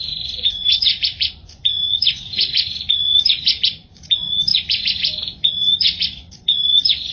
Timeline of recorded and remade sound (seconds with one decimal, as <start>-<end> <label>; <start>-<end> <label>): 0.0-7.1 remade